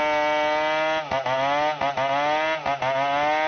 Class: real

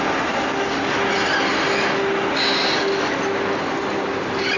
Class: real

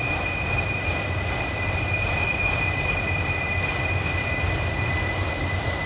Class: real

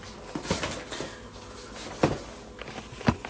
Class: real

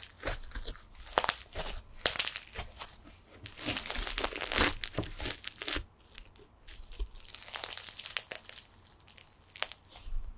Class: real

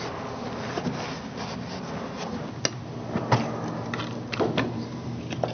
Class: real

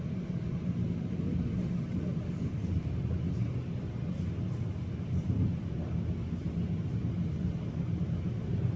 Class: real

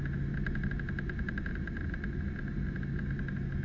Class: real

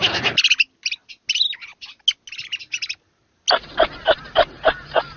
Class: real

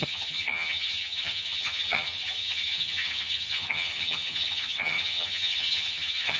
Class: fake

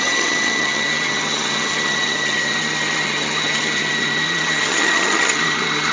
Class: fake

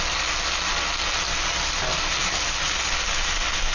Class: real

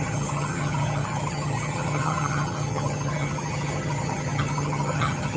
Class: fake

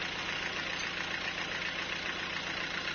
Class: real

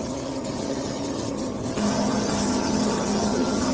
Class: fake